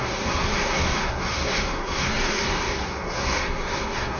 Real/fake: fake